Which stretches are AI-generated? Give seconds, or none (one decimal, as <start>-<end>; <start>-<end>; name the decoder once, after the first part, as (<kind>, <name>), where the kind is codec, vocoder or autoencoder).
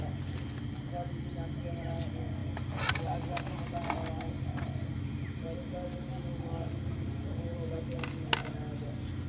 none